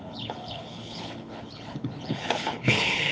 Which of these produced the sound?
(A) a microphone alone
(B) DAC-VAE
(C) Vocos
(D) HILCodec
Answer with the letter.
D